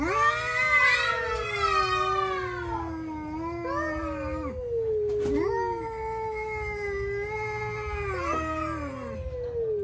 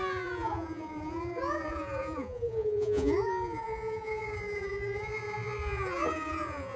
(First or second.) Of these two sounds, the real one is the first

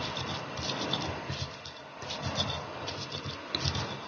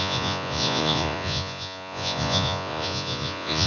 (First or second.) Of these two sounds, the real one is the first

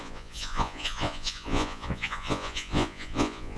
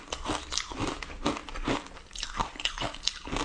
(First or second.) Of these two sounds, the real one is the second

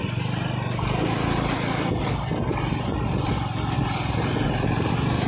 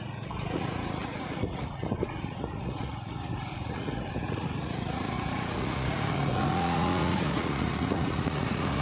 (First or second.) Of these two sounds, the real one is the first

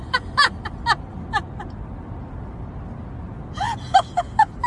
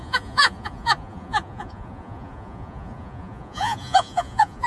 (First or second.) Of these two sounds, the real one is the first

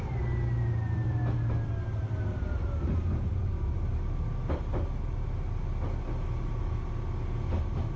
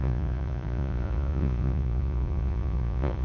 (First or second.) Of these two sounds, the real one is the first